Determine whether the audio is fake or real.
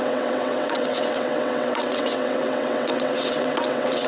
fake